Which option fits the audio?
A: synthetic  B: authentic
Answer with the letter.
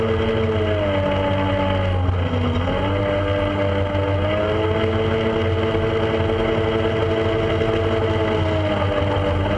B